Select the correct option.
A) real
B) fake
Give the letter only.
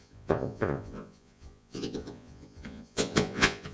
B